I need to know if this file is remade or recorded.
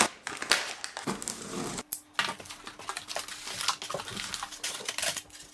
recorded